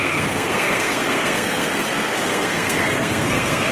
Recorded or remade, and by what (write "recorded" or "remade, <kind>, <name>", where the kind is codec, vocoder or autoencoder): remade, codec, SNAC